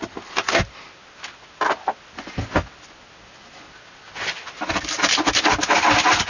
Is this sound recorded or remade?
recorded